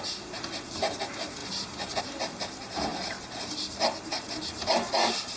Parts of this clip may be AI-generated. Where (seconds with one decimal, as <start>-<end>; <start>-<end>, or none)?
none